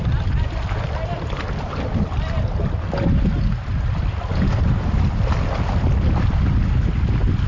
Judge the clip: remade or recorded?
recorded